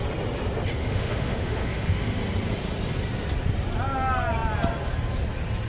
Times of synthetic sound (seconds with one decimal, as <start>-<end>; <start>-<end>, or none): 0.8-2.2